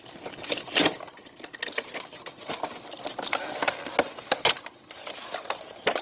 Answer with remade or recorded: recorded